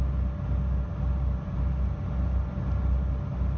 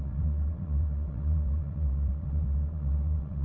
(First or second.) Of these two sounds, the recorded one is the first